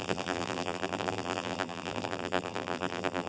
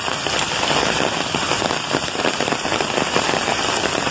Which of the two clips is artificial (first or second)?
first